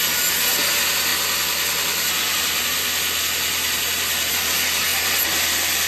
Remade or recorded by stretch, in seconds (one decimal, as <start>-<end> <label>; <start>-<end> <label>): 0.0-5.9 recorded